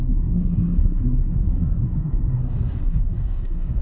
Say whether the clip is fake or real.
fake